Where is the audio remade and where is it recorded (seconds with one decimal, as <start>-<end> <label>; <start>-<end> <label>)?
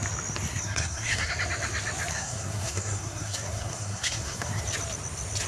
0.0-0.5 recorded; 0.5-1.3 remade; 1.3-2.1 recorded; 2.1-4.6 remade; 4.6-5.5 recorded